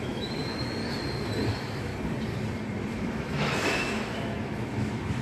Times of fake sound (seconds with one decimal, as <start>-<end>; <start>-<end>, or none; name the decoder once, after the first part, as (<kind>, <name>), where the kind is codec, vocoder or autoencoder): 0.0-0.8 (autoencoder, DAC-VAE); 1.5-1.9; 2.9-5.2